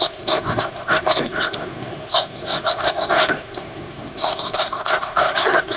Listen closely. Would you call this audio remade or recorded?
remade